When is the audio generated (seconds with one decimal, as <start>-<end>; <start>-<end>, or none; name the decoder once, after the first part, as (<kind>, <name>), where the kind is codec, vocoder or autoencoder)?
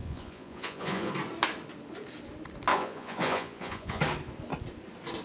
0.0-1.1 (vocoder, Vocos); 2.7-4.0